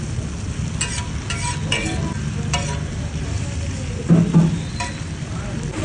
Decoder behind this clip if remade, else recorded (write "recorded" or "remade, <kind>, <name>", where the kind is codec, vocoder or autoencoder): recorded